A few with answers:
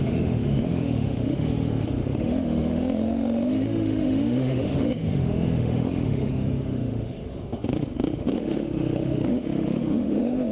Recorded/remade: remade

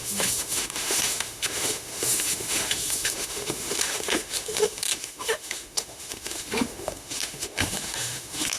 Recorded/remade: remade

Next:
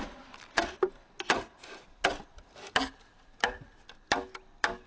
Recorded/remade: recorded